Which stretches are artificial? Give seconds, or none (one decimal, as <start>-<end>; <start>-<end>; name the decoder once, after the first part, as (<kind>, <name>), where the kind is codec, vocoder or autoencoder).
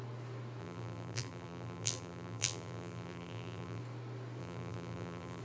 0.6-3.8 (vocoder, BigVGAN v2); 4.4-5.4